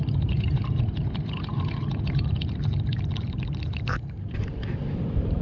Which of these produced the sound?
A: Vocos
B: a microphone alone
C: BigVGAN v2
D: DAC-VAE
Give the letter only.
B